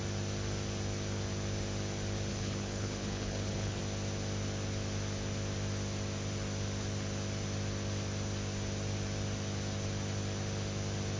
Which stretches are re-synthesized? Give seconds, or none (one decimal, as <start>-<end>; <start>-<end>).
2.3-3.8